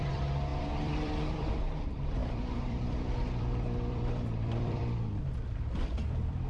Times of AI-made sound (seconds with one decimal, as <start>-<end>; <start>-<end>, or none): 0.0-6.5